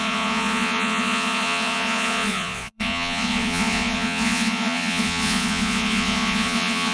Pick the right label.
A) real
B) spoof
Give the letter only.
B